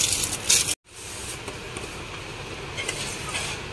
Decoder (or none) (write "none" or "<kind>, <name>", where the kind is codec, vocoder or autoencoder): none